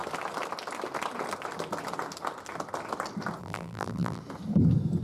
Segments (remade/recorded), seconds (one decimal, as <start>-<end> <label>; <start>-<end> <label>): 0.0-3.4 recorded; 3.4-4.2 remade; 4.2-5.0 recorded